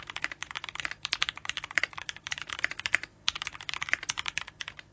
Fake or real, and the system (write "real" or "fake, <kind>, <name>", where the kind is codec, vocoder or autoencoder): fake, vocoder, BigVGAN v2